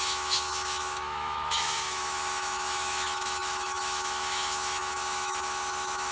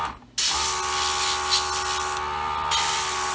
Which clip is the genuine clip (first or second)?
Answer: second